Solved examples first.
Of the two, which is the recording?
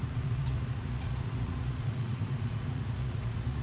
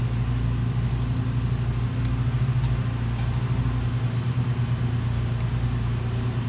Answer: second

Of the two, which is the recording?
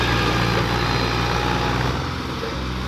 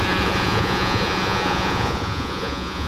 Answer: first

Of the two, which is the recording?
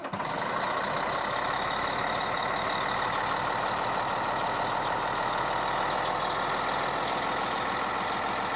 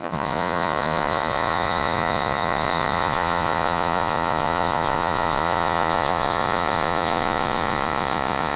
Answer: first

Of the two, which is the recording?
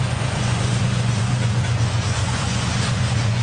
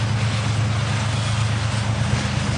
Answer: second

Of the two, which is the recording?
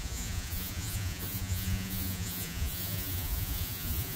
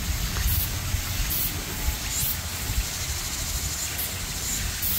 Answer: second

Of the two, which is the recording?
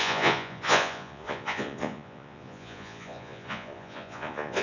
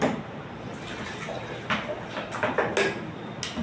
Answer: second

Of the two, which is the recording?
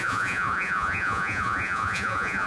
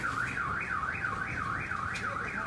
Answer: second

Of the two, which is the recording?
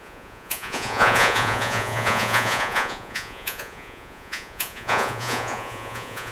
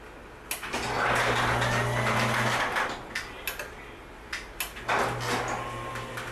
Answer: second